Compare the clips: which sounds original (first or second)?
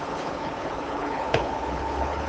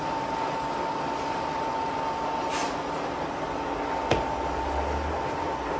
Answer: second